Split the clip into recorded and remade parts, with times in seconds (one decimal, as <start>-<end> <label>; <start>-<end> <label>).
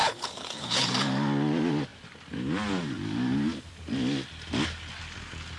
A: 0.0-0.9 remade; 0.9-5.6 recorded